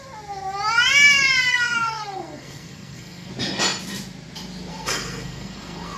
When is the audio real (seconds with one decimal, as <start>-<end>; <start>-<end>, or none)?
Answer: 0.0-1.5; 3.3-4.7